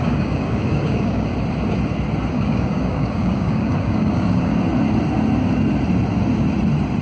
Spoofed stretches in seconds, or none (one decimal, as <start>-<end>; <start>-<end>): 0.0-1.3; 2.3-4.5